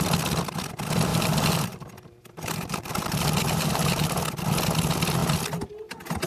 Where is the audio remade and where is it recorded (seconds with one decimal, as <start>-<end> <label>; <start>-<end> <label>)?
0.0-1.1 recorded; 1.1-4.2 remade; 4.2-6.3 recorded